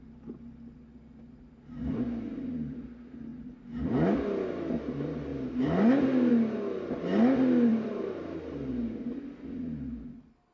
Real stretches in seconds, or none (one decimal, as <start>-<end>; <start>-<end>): 0.0-5.3; 6.3-7.7; 8.7-10.5